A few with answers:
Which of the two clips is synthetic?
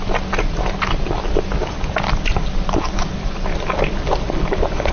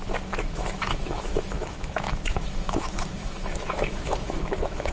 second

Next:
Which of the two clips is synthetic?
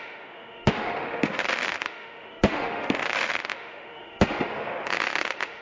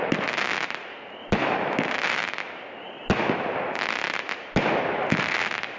first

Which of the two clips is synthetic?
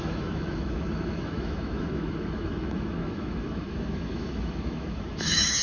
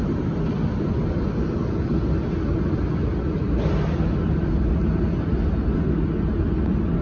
first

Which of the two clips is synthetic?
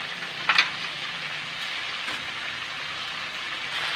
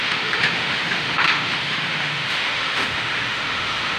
second